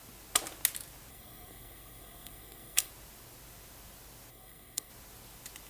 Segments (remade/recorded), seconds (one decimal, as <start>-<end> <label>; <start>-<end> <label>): 0.0-1.1 recorded; 1.1-2.9 remade; 2.9-4.3 recorded; 4.3-4.9 remade; 4.9-5.7 recorded